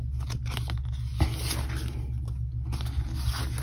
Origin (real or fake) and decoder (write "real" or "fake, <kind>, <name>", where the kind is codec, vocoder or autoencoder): real